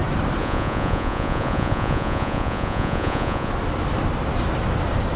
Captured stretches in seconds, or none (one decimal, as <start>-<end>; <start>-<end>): 0.0-0.4; 3.5-5.2

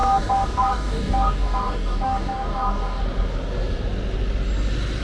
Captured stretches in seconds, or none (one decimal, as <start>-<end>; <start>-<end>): 3.0-5.0

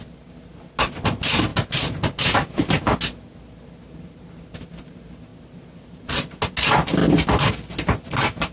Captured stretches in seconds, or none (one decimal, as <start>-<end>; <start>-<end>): 0.0-8.5